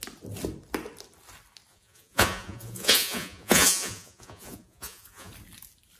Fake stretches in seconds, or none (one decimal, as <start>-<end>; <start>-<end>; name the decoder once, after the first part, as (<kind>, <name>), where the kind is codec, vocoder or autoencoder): 1.7-5.3 (vocoder, Vocos)